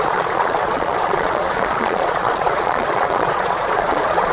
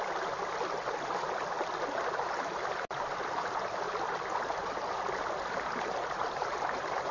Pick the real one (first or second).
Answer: second